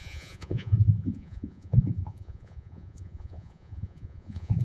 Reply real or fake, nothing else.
fake